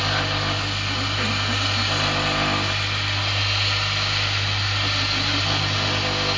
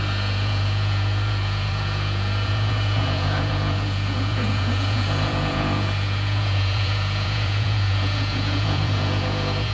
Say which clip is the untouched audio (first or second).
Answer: first